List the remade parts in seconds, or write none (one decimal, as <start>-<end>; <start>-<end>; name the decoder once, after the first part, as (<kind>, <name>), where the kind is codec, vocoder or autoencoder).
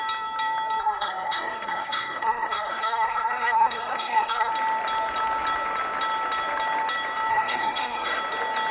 0.8-4.5 (codec, SNAC); 7.3-8.2